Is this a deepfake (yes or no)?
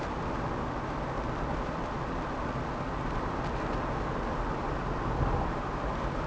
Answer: no